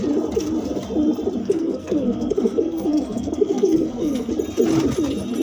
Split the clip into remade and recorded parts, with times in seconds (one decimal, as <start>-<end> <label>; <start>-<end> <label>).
0.0-1.4 recorded; 1.4-4.3 remade; 4.3-5.4 recorded